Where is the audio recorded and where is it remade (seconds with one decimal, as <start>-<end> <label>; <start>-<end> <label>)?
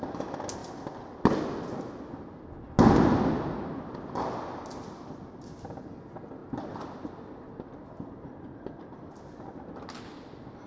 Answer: 0.0-10.7 recorded